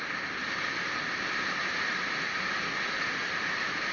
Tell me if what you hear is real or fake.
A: real